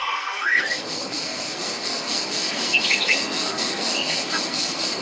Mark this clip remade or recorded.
remade